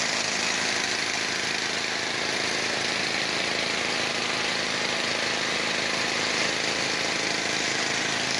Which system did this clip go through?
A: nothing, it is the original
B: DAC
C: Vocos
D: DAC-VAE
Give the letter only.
A